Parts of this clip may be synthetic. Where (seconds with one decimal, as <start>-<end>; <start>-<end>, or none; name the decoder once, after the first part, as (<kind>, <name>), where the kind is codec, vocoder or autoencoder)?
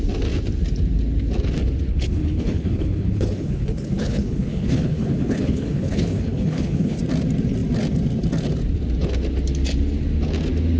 1.9-7.0 (codec, HILCodec)